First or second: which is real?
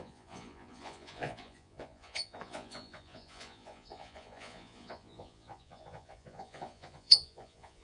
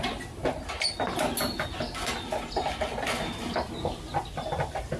second